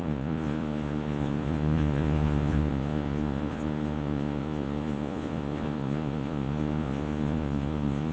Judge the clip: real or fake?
fake